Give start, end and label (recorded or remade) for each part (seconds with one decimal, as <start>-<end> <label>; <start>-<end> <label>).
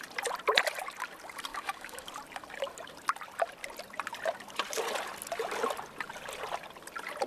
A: 0.0-1.5 recorded; 1.5-2.1 remade; 2.1-7.3 recorded